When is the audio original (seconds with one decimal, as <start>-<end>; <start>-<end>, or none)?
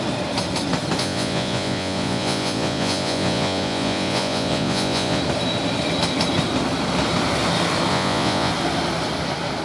0.0-1.0; 5.2-7.9; 8.5-9.6